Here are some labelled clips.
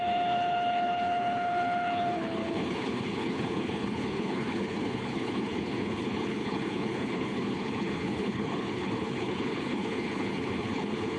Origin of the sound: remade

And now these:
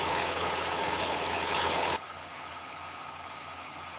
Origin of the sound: remade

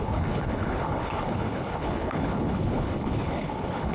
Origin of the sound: remade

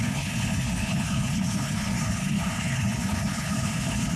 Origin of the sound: remade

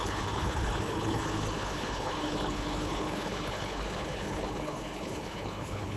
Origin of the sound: remade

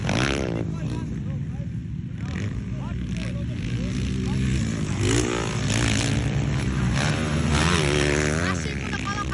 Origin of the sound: recorded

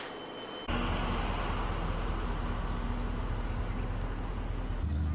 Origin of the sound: recorded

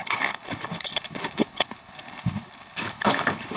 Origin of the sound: remade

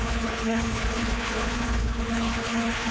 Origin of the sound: remade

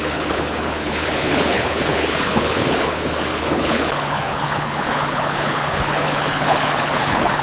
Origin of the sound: remade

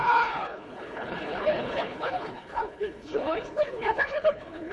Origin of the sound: remade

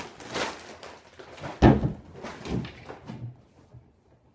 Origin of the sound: recorded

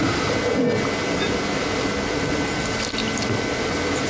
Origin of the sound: recorded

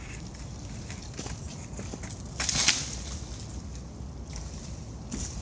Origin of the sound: recorded